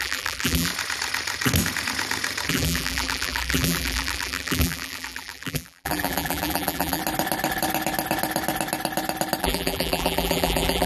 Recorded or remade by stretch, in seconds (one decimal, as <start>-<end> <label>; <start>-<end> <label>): 0.0-0.7 remade; 0.7-2.5 recorded; 2.5-7.0 remade; 7.0-9.4 recorded; 9.4-10.9 remade